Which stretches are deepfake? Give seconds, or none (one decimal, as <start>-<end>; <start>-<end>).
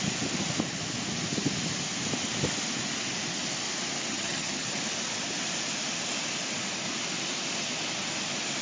4.1-4.8